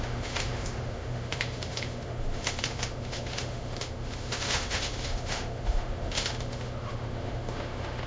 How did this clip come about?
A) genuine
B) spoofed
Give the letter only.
B